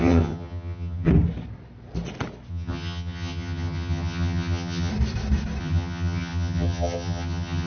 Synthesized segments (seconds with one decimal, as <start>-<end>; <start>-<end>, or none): 0.0-1.1; 2.5-4.9; 5.6-7.7